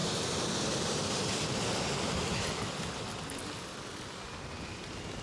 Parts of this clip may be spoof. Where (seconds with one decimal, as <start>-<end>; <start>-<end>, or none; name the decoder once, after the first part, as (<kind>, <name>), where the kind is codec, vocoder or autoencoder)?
none